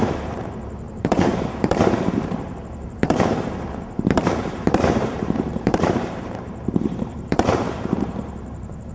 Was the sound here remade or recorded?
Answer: remade